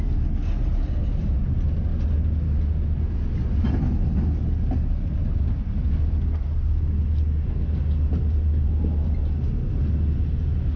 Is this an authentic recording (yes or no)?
yes